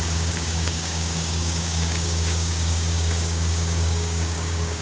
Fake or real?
fake